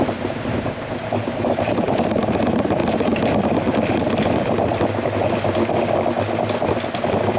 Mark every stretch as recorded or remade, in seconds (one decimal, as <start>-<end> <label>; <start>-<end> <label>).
0.0-2.8 remade; 2.8-7.4 recorded